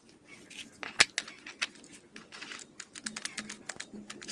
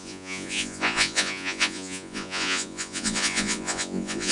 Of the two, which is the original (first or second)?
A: first